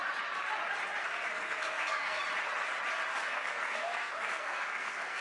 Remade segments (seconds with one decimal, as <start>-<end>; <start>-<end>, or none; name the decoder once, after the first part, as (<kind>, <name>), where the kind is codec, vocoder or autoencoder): 1.0-2.2 (codec, SNAC); 3.2-5.2